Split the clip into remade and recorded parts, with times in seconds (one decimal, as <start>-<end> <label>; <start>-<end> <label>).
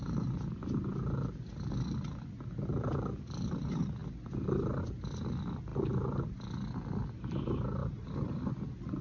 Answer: 0.0-7.8 recorded; 7.8-8.5 remade; 8.5-9.0 recorded